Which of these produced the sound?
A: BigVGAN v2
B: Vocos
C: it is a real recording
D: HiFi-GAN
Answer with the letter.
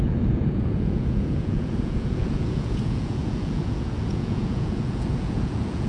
B